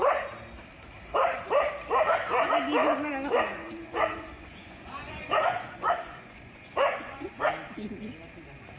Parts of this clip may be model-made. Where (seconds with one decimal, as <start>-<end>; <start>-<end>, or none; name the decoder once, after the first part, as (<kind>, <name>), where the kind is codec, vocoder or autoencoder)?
3.5-7.4 (vocoder, Vocos)